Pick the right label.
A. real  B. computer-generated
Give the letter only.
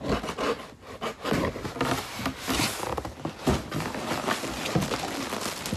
A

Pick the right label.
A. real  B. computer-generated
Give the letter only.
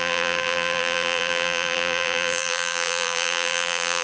B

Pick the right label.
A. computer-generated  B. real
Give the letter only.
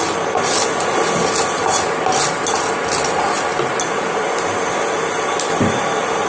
B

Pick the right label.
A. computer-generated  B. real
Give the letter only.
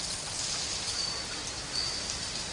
B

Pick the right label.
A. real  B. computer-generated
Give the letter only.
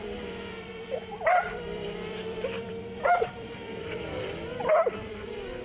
B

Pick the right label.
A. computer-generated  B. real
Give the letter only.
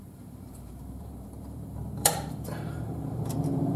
A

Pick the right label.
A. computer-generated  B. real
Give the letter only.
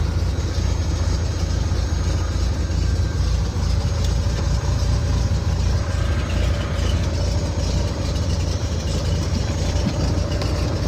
B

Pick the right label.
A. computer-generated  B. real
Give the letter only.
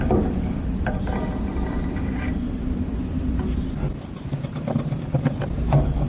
A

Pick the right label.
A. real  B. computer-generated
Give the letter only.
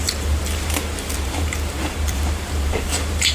B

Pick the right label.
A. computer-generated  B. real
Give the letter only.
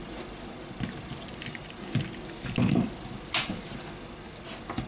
B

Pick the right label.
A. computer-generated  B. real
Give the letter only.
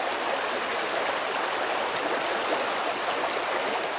B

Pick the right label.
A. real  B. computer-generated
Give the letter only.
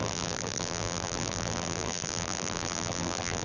B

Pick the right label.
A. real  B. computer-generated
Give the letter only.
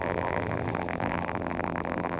B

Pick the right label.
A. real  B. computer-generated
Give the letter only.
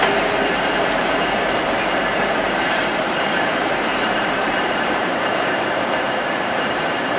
B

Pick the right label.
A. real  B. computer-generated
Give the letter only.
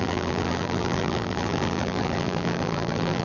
B